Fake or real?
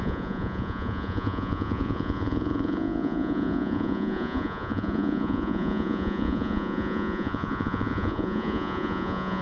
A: fake